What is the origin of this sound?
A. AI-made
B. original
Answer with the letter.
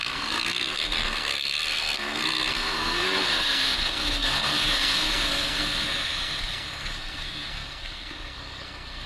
A